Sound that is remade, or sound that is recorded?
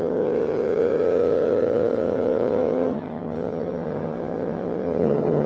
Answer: remade